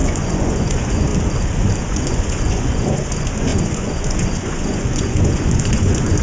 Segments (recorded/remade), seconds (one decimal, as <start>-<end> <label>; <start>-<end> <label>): 0.0-1.1 remade; 1.1-1.8 recorded; 1.8-6.2 remade